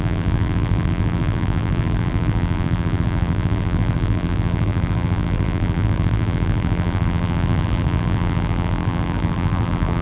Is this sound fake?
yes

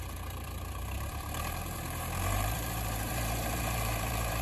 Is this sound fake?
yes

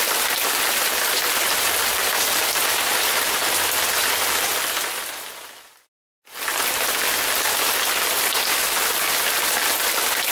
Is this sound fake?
no